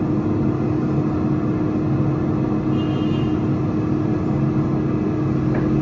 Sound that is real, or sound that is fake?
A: real